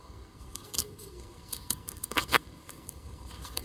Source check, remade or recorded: remade